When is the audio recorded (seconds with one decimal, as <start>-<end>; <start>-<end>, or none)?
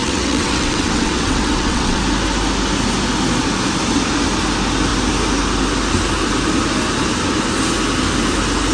2.0-8.7